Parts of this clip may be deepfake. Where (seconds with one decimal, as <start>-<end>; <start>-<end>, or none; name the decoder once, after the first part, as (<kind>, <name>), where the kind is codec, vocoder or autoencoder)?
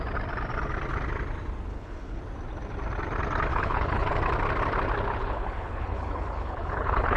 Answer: 1.7-2.2 (codec, HILCodec); 3.5-4.1; 5.2-7.2